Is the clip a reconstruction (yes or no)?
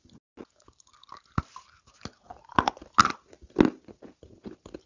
no